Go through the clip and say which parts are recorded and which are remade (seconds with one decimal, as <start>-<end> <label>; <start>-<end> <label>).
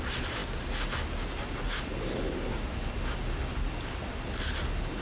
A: 0.0-5.0 recorded